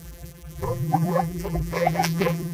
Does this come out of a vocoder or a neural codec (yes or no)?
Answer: yes